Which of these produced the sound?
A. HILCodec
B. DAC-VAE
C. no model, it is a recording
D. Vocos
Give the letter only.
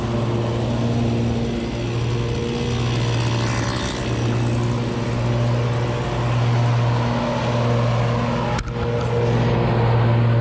C